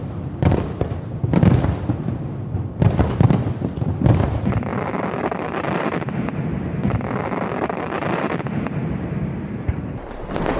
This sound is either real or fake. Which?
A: fake